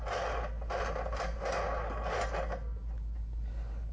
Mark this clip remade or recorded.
recorded